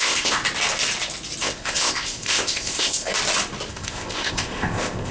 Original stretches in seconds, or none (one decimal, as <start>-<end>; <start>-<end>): 0.4-1.4; 3.1-3.7